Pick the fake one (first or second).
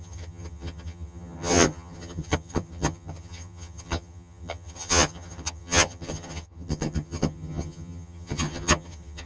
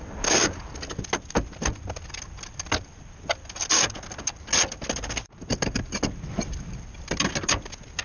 first